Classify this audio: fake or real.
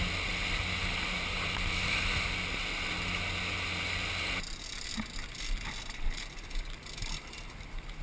real